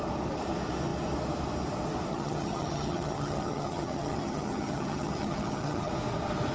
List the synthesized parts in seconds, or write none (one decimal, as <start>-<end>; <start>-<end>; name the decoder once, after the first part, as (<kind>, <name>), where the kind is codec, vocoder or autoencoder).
2.1-5.9 (vocoder, HiFi-GAN)